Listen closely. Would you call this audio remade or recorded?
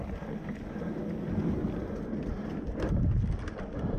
recorded